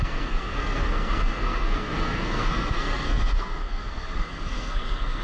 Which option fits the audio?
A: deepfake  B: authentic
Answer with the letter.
A